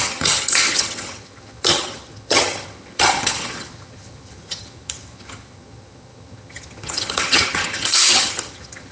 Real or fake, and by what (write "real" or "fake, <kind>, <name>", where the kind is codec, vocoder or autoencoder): fake, vocoder, HiFi-GAN